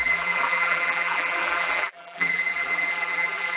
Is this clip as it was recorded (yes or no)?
no